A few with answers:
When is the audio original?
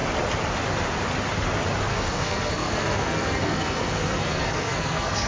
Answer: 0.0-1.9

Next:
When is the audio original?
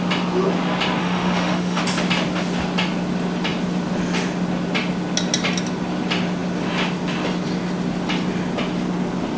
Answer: 0.0-1.0; 1.8-9.4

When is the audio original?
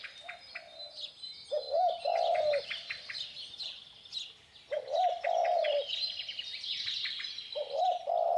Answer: 0.0-8.4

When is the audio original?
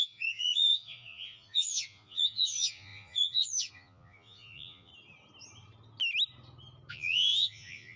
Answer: 4.9-6.9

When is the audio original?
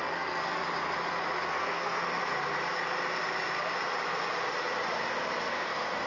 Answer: 0.6-1.5; 2.2-5.5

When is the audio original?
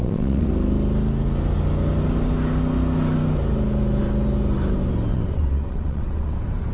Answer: 0.5-5.1; 6.3-6.7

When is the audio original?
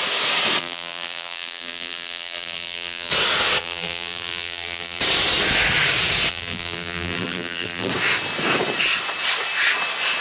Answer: 0.0-0.6; 3.1-3.6; 5.0-6.3; 7.9-10.2